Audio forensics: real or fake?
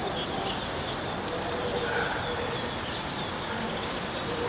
real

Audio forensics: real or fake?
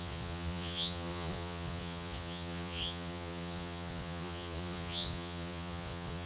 fake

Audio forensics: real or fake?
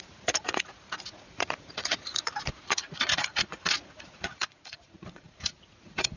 fake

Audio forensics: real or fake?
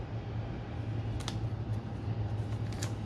real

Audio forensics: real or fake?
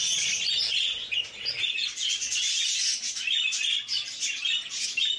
real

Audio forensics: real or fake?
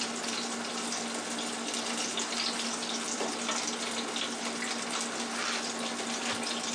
real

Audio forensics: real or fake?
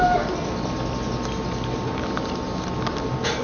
real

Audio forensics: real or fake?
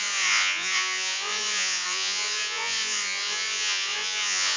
fake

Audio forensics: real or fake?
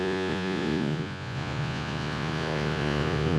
fake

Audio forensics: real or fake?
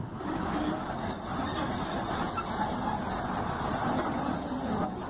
real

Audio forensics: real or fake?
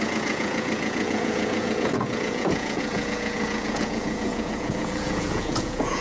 fake